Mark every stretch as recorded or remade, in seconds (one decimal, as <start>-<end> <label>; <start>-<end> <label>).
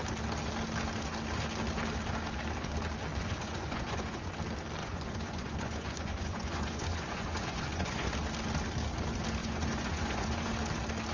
0.0-3.1 recorded; 3.1-4.3 remade; 4.3-4.8 recorded; 4.8-8.1 remade; 8.1-9.4 recorded; 9.4-10.5 remade; 10.5-11.1 recorded